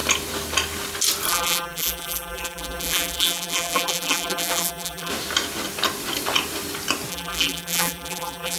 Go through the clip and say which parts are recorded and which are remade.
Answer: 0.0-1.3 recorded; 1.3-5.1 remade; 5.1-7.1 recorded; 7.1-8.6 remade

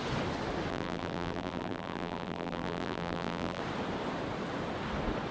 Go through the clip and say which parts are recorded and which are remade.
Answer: 0.0-0.7 recorded; 0.7-3.6 remade; 3.6-5.3 recorded